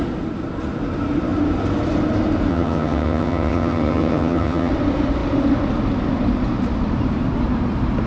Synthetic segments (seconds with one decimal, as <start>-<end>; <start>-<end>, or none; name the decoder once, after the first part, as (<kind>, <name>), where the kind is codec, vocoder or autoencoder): 2.5-4.7 (vocoder, HiFi-GAN)